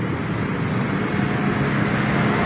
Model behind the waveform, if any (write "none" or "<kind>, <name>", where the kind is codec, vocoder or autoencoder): none